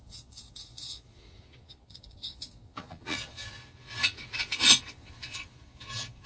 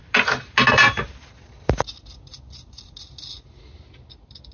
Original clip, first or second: second